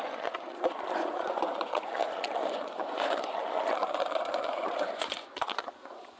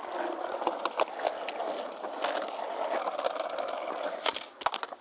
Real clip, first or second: second